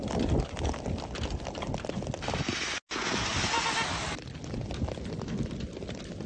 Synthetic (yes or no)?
no